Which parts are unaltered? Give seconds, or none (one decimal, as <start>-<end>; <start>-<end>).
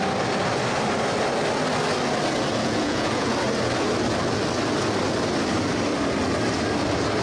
0.0-2.6; 3.3-7.2